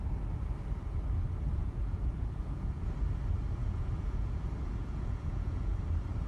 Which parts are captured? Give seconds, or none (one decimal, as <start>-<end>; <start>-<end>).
0.0-1.6; 2.9-3.6; 5.8-6.3